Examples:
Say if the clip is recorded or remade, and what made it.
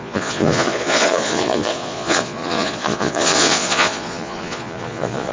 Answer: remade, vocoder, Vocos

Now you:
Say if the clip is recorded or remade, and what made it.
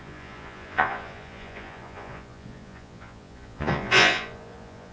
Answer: remade, vocoder, Vocos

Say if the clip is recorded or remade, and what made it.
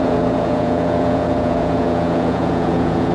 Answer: remade, vocoder, Vocos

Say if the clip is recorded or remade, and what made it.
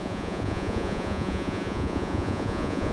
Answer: remade, vocoder, Vocos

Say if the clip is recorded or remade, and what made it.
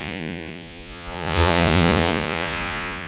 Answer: remade, vocoder, Vocos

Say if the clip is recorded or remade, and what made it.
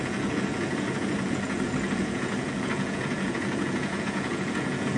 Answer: remade, vocoder, Vocos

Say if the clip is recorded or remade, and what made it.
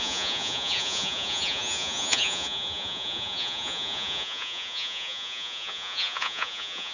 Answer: remade, vocoder, Vocos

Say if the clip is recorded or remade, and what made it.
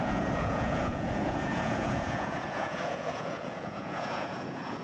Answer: remade, vocoder, Vocos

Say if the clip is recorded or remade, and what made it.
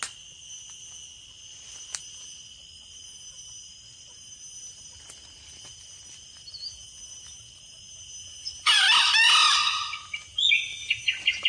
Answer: recorded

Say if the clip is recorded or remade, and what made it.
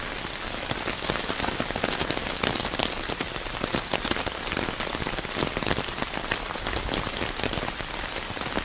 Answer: recorded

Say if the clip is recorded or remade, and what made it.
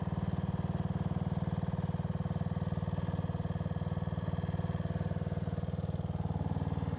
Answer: recorded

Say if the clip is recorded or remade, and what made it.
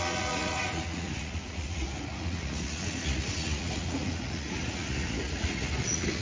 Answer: remade, vocoder, Vocos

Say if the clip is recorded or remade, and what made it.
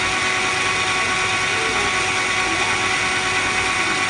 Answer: recorded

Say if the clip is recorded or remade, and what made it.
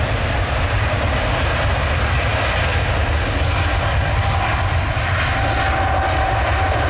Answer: recorded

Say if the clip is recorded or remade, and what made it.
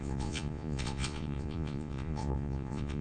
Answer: remade, vocoder, Vocos